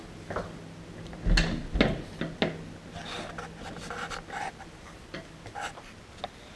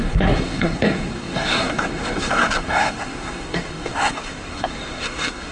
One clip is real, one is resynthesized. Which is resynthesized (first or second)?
second